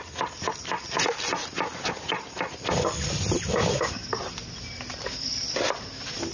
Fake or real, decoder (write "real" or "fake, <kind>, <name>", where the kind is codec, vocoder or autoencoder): real